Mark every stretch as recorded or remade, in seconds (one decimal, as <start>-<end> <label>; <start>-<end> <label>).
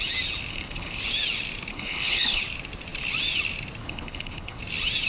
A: 0.0-0.5 recorded; 0.5-1.0 remade; 1.0-1.7 recorded; 1.7-2.4 remade; 2.4-3.8 recorded; 3.8-4.6 remade; 4.6-5.1 recorded